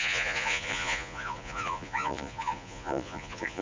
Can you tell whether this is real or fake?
fake